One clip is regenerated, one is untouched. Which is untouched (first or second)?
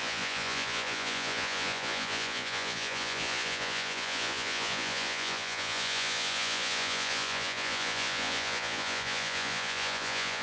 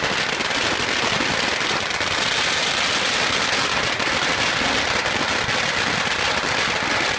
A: second